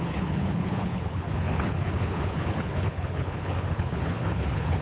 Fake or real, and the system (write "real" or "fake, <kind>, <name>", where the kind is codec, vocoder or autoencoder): fake, codec, HILCodec